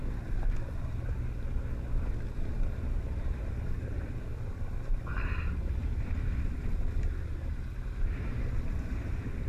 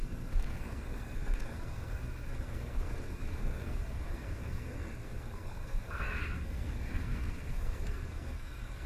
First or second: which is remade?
second